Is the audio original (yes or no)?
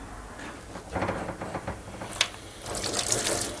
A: yes